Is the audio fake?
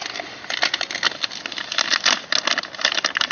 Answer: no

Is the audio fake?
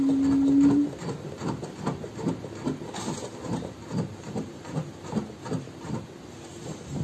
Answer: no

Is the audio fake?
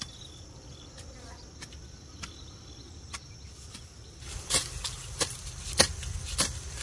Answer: no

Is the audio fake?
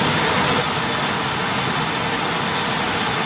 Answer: no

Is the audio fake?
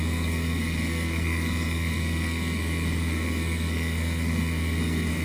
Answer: yes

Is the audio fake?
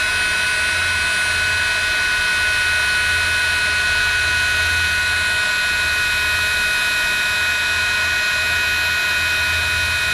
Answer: no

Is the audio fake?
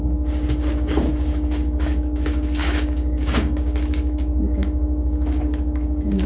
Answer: yes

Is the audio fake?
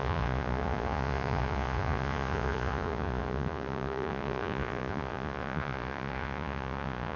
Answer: yes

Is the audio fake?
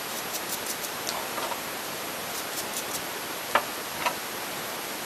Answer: no